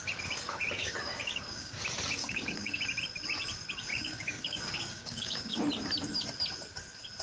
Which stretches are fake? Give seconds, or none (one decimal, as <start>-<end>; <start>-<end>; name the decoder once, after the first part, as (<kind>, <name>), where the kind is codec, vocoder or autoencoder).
0.8-1.8 (codec, DAC); 2.2-2.8; 3.9-5.6